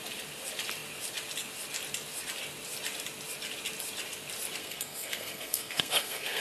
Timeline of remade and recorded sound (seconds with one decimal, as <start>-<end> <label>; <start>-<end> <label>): 0.0-4.6 recorded; 4.6-6.4 remade